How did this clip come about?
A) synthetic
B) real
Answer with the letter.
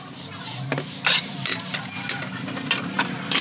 B